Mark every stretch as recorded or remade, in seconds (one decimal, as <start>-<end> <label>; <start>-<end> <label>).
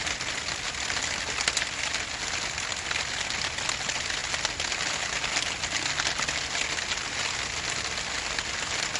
0.0-9.0 recorded